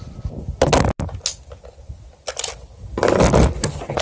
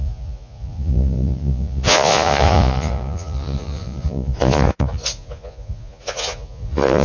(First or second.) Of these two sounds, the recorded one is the first